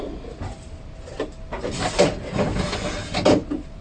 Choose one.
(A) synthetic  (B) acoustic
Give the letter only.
B